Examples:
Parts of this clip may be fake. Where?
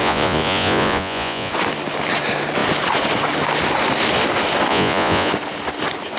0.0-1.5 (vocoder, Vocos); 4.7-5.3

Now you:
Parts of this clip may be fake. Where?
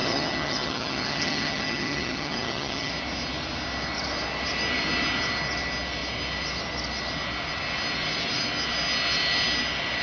0.0-2.9 (vocoder, HiFi-GAN)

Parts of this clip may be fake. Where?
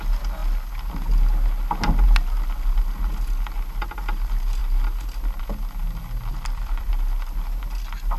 6.3-6.9 (vocoder, BigVGAN v2)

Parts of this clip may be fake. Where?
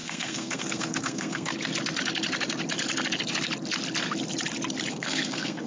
0.0-1.5 (codec, SNAC); 4.9-5.7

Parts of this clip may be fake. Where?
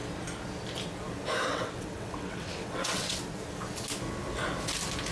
1.5-3.2 (vocoder, WaveNeXt)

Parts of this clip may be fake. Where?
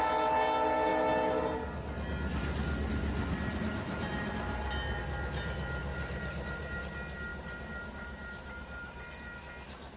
5.9-6.8 (vocoder, BigVGAN v2); 7.3-9.4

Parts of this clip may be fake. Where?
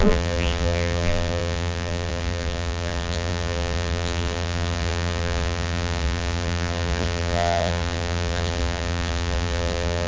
0.0-10.1 (vocoder, BigVGAN v2)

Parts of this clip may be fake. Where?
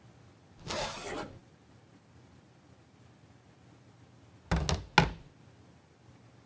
none